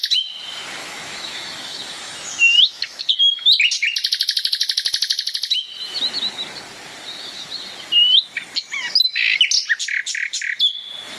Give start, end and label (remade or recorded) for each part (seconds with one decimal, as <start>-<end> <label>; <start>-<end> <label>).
0.0-0.8 recorded; 0.8-3.0 remade; 3.0-11.2 recorded